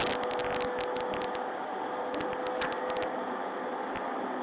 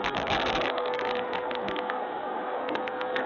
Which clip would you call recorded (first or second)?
first